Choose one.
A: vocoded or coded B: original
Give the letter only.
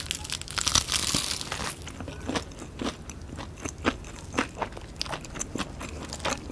B